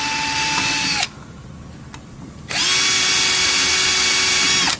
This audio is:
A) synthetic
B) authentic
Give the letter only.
B